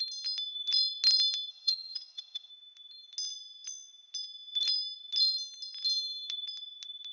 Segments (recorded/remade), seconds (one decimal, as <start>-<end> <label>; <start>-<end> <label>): 0.0-1.5 recorded; 1.5-2.5 remade; 2.5-7.1 recorded